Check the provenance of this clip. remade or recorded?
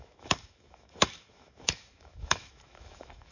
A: remade